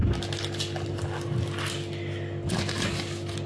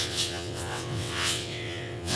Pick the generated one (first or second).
second